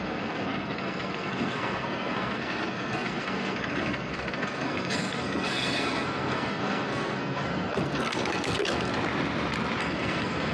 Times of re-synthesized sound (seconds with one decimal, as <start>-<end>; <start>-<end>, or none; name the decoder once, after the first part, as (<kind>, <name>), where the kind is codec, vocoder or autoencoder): 0.0-8.9 (codec, SNAC); 9.8-10.5